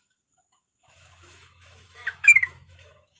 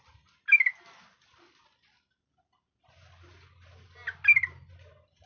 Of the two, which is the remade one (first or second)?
first